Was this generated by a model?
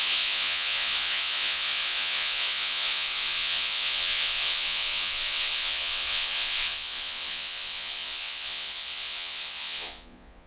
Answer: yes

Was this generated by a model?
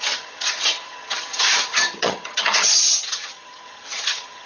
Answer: yes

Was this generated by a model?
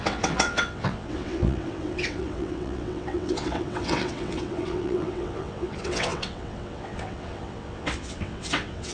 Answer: yes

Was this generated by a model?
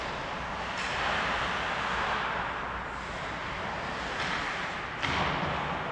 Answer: no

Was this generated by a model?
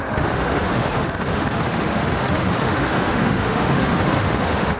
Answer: yes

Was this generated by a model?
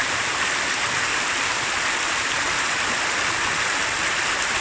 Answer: no